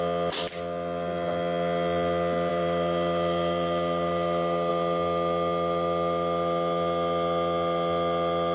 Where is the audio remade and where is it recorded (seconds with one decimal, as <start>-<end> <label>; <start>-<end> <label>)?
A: 0.0-2.5 recorded; 2.5-4.7 remade; 4.7-8.5 recorded